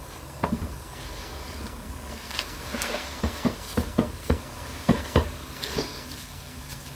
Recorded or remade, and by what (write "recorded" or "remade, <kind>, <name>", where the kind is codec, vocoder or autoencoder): remade, codec, SNAC